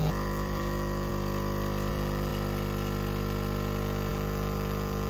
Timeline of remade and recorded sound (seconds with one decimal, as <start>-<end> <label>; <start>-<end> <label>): 0.0-1.1 remade; 1.1-1.9 recorded; 1.9-2.3 remade; 2.3-4.1 recorded; 4.1-5.1 remade